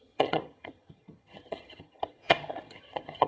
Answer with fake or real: fake